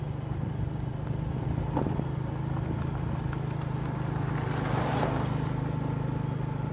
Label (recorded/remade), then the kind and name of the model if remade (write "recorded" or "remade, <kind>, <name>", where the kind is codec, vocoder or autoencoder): recorded